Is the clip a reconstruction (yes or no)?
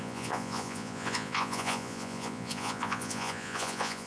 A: yes